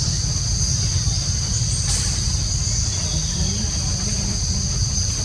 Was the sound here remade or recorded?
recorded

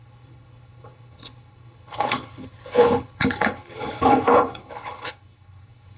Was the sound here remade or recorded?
remade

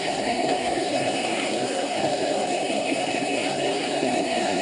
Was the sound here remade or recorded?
remade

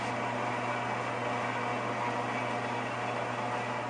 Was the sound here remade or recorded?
recorded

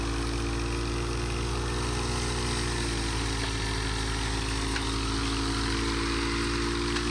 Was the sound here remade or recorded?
recorded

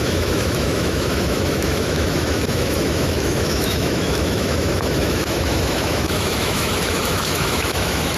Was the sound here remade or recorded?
remade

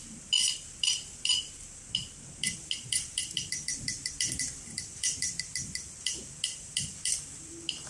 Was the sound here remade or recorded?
recorded